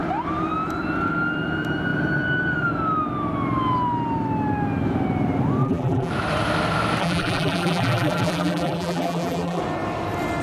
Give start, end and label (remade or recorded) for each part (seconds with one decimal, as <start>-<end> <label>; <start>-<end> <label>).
0.0-5.6 recorded; 5.6-6.1 remade; 6.1-7.0 recorded; 7.0-9.6 remade; 9.6-10.4 recorded